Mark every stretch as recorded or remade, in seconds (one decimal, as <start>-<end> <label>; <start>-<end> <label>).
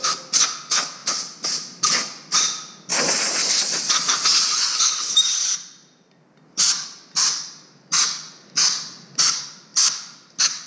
0.0-10.7 recorded